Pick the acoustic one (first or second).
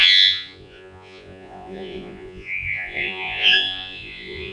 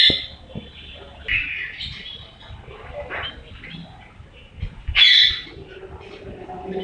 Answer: second